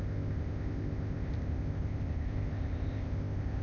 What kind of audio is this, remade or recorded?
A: remade